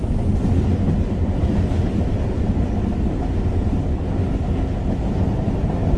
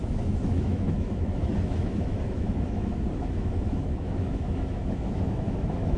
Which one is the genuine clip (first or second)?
first